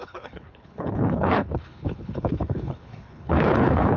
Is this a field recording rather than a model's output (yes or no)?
no